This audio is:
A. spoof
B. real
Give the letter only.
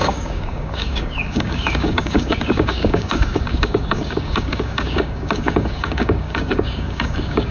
A